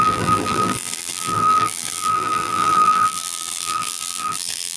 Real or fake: fake